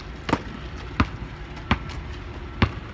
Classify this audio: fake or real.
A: real